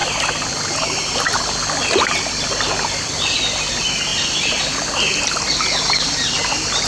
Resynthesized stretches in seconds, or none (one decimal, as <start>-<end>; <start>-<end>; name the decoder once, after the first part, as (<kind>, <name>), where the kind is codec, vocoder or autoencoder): none